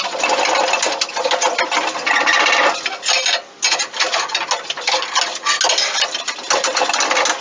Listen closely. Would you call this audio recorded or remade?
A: recorded